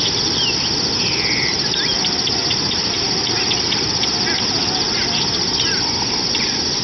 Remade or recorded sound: remade